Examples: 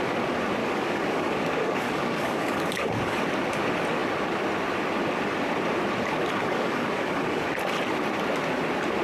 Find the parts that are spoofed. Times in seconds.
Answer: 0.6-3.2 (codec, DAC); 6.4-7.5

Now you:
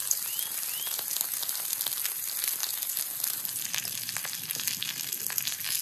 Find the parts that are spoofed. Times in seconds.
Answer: 0.0-1.5 (vocoder, BigVGAN v2); 2.6-4.7

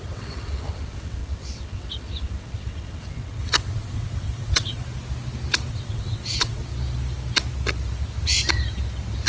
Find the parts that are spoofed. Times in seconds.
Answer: 0.0-4.8 (vocoder, WaveNeXt); 5.7-6.6

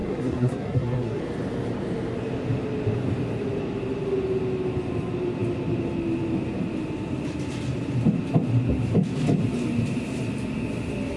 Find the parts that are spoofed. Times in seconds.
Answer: 0.0-1.2 (codec, SNAC)

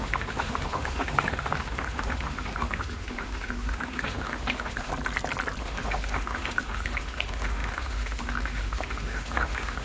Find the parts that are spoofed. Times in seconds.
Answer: 0.0-4.9 (autoencoder, DAC-VAE); 5.6-9.8

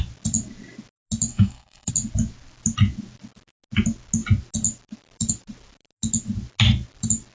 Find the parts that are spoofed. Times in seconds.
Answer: 1.3-1.9 (codec, SNAC)

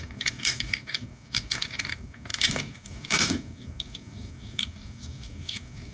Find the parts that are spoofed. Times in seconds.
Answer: 0.0-5.9 (codec, DAC)

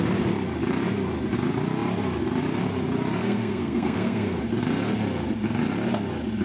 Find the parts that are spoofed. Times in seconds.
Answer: 3.2-4.4 (codec, SNAC)